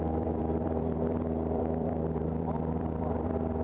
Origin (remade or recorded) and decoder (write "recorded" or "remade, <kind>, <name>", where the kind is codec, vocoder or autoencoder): remade, vocoder, BigVGAN v2